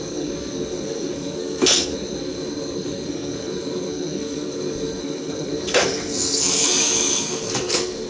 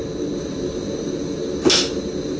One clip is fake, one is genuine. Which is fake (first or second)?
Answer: first